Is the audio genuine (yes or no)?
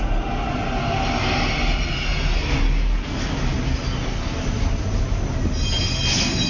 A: yes